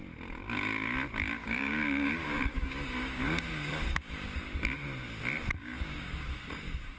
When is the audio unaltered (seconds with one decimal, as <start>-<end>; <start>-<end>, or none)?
0.0-1.4; 4.4-5.6